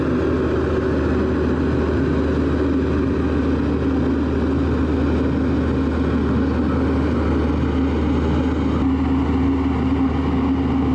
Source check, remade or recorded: recorded